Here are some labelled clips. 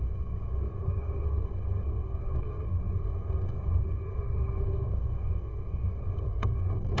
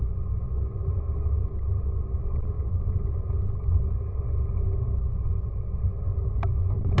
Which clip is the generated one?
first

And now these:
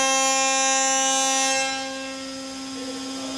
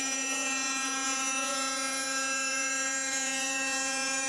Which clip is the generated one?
second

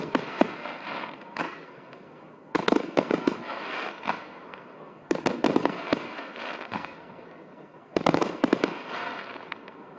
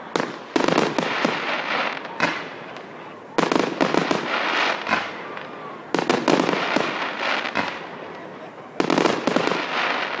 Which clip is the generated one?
first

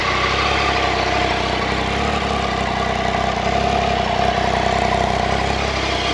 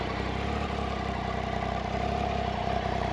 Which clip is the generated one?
second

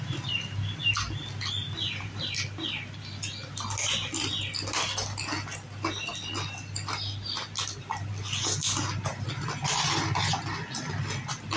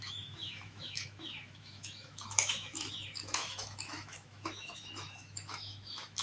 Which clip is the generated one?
second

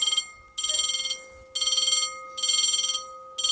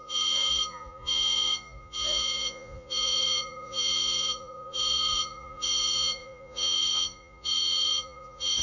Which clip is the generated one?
second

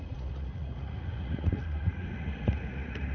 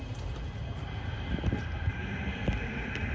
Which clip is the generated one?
first